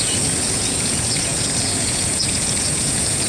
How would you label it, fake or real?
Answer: fake